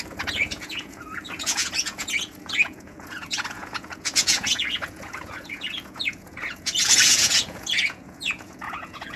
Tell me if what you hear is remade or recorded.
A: remade